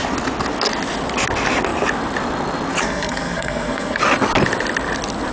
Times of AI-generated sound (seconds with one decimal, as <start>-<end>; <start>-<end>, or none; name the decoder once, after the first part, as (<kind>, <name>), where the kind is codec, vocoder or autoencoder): 2.8-4.0 (codec, SNAC)